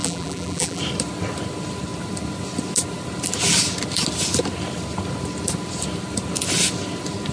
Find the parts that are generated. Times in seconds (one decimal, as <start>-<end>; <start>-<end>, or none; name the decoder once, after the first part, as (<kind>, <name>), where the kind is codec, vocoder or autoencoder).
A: 0.0-0.8 (vocoder, BigVGAN v2)